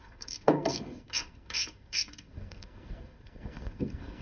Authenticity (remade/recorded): remade